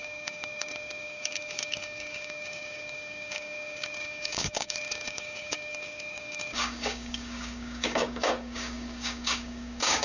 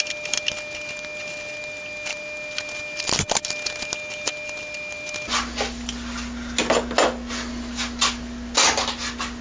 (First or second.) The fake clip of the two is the first